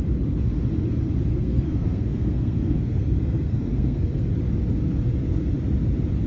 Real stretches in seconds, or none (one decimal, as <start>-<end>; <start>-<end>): 0.0-1.3; 4.3-6.3